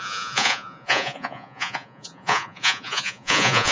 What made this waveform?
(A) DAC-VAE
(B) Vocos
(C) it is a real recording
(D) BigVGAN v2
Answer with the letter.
B